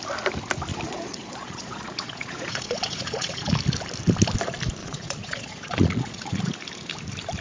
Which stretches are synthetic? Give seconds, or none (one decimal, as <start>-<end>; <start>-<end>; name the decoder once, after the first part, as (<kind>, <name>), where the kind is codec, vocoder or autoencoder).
0.7-3.5 (vocoder, Vocos); 4.8-6.5